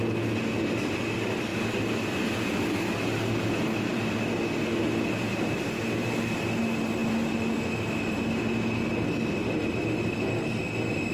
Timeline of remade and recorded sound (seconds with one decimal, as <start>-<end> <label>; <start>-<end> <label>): 0.0-11.1 recorded